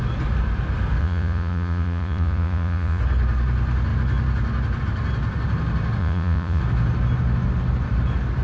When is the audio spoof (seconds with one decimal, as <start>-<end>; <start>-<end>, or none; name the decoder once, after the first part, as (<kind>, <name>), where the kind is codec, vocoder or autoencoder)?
1.0-3.0 (vocoder, Vocos); 6.0-6.6